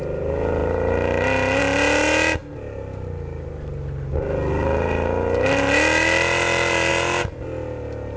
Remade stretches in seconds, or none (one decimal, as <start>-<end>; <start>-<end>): none